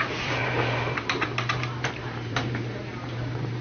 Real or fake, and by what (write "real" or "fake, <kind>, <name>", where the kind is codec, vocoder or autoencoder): fake, vocoder, BigVGAN v2